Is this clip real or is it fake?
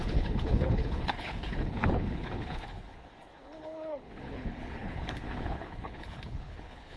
fake